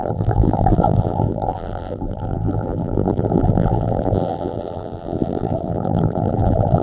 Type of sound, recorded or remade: remade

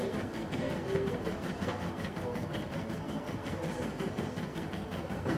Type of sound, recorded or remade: remade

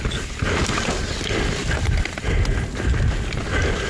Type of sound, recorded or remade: recorded